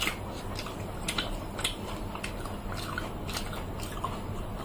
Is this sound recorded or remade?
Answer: recorded